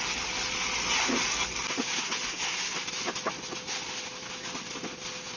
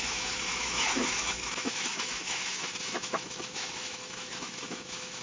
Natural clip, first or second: first